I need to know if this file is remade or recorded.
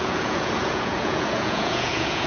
remade